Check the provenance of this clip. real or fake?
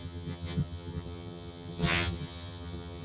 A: fake